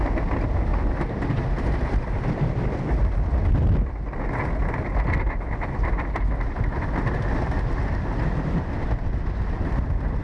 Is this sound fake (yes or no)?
no